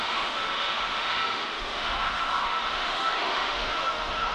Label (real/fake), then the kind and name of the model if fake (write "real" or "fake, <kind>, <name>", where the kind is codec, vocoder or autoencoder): fake, autoencoder, DAC-VAE